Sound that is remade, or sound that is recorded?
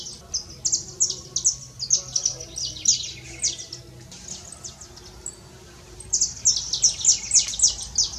recorded